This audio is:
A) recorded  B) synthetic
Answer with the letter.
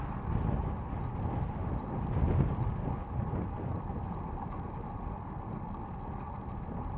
A